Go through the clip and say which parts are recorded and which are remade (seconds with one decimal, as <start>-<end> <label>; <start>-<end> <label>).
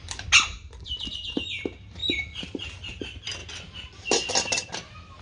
0.0-2.0 recorded; 2.0-3.0 remade; 3.0-3.4 recorded; 3.4-4.7 remade; 4.7-5.2 recorded